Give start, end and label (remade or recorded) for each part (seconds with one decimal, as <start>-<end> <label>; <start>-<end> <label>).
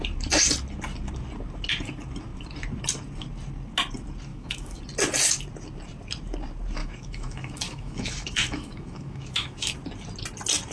0.0-4.3 recorded; 4.3-4.8 remade; 4.8-6.8 recorded; 6.8-9.7 remade; 9.7-10.7 recorded